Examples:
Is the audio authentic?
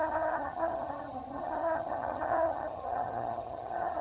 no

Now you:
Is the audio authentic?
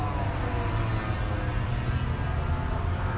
yes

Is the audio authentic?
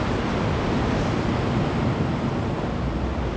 yes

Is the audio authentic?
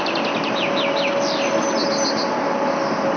yes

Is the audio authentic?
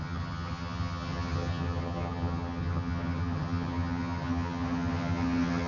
no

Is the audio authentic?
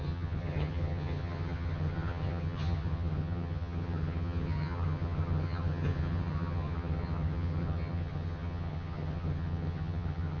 no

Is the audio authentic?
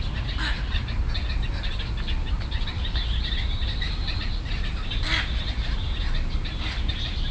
yes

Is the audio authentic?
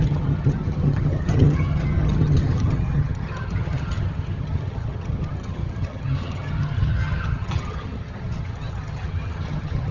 no